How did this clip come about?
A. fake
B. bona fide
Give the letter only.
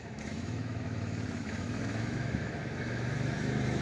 A